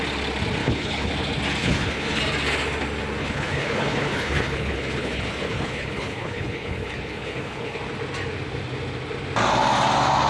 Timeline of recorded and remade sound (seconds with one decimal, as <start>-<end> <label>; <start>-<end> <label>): 0.0-0.6 recorded; 0.6-1.1 remade; 1.1-1.6 recorded; 1.6-2.2 remade; 2.2-3.2 recorded; 3.2-7.8 remade; 7.8-10.3 recorded